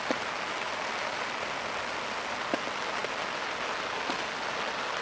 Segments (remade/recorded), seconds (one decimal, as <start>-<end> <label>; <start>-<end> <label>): 0.0-5.0 recorded